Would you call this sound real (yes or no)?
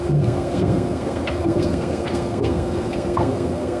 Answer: no